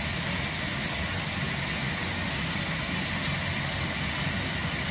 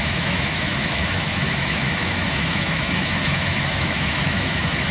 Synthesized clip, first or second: second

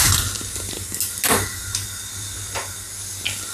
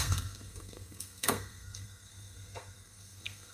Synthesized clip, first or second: second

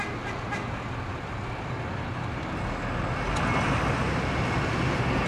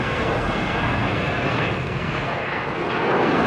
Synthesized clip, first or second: second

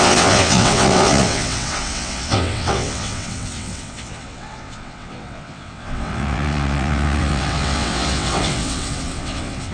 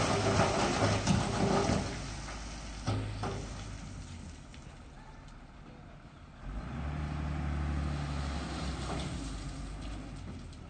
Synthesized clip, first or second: first